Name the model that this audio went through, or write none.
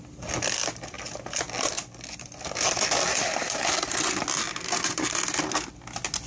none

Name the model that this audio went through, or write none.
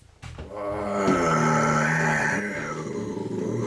none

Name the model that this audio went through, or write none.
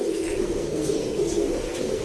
codec, SNAC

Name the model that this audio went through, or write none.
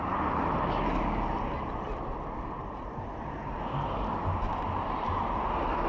none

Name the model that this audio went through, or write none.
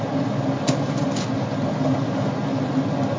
none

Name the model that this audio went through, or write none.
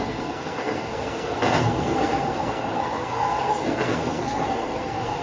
codec, SNAC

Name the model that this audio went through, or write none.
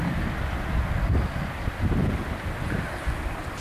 none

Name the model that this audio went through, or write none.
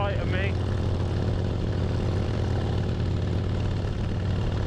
none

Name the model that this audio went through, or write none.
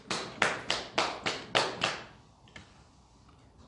none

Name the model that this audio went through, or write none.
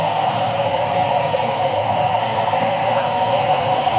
codec, SNAC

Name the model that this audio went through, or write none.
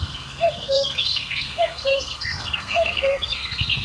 codec, SNAC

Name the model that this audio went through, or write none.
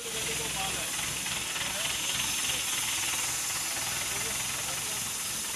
none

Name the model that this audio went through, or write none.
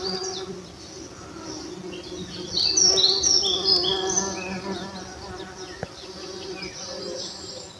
none